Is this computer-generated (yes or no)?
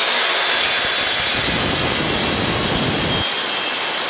no